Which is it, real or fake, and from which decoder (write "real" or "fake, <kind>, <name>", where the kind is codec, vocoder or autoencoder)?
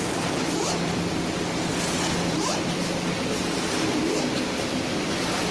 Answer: fake, vocoder, BigVGAN v2